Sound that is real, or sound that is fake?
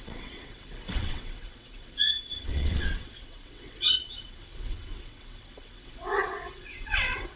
fake